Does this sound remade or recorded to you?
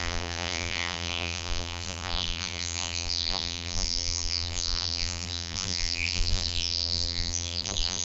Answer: remade